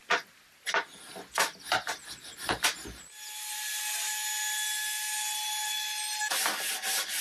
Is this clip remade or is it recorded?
recorded